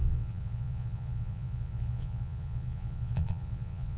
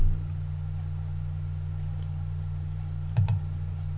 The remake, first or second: first